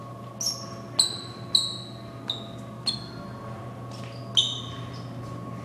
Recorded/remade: recorded